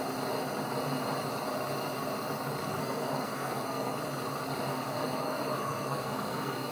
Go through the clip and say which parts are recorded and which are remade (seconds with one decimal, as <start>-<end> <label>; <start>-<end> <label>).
0.0-2.6 recorded; 2.6-4.0 remade; 4.0-4.7 recorded; 4.7-6.7 remade